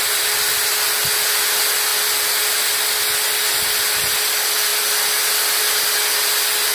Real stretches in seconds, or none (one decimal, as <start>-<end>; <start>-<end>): 0.0-6.7